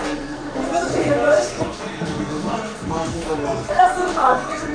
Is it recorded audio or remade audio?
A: remade